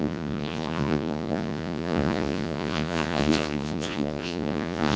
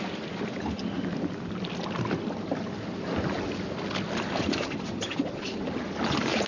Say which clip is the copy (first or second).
first